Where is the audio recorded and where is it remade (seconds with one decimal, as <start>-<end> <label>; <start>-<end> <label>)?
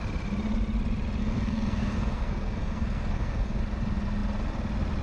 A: 0.0-1.2 recorded; 1.2-3.6 remade; 3.6-5.0 recorded